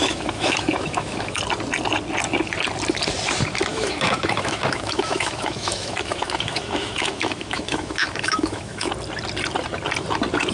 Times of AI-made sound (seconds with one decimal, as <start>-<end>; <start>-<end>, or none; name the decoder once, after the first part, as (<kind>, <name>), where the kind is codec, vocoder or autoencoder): 0.0-1.4 (autoencoder, DAC-VAE); 3.7-8.9